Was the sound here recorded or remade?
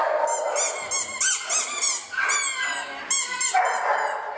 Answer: recorded